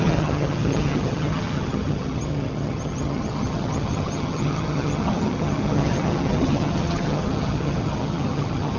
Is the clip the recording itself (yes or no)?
no